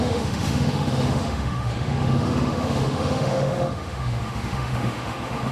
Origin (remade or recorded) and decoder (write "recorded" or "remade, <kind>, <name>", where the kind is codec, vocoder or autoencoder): remade, autoencoder, DAC-VAE